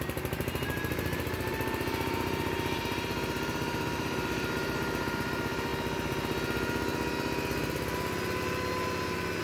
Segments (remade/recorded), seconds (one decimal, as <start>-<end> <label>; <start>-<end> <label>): 0.0-5.7 remade; 5.7-9.4 recorded